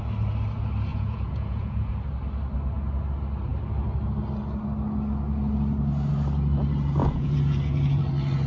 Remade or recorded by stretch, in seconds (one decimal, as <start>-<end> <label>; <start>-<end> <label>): 0.0-0.9 recorded; 0.9-1.9 remade; 1.9-7.0 recorded; 7.0-8.0 remade; 8.0-8.5 recorded